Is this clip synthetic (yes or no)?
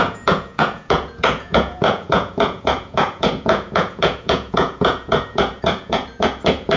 yes